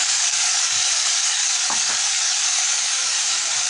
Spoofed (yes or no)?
yes